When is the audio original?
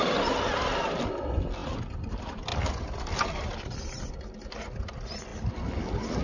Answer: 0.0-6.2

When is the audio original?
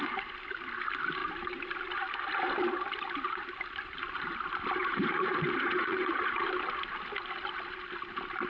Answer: 0.0-4.8; 6.3-8.5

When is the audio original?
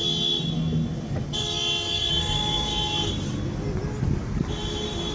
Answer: 0.0-2.1; 2.7-5.1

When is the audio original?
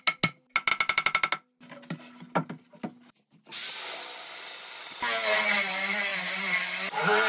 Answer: 0.0-7.3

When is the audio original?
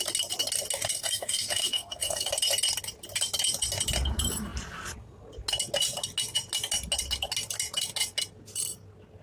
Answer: 0.0-0.9; 2.3-9.2